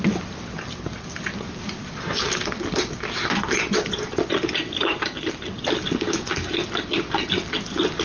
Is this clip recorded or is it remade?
recorded